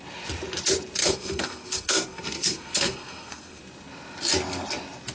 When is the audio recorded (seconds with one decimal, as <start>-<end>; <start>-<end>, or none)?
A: 0.0-1.0; 3.6-5.1